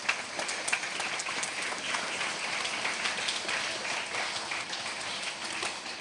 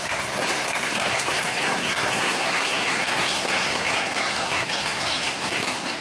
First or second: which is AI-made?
second